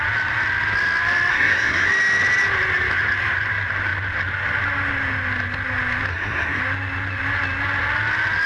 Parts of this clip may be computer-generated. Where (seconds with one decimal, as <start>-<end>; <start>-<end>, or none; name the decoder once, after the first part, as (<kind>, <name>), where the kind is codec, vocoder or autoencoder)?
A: 1.3-1.9 (codec, SNAC); 6.1-6.6